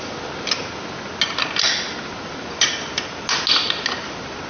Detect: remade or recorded recorded